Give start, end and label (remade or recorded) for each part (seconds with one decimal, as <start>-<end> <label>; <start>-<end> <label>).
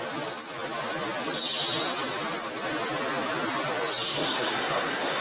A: 0.0-4.1 recorded; 4.1-5.2 remade